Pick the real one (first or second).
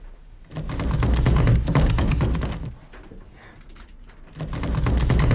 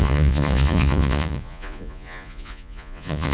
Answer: first